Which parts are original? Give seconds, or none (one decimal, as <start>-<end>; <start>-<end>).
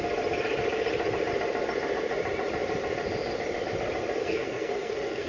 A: 0.0-4.2